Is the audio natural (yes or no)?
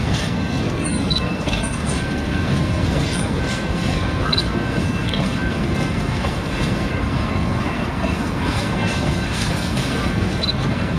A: no